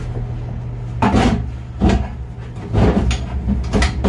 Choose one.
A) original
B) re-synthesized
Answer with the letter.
A